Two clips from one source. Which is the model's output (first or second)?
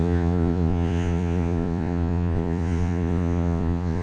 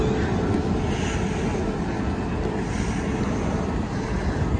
first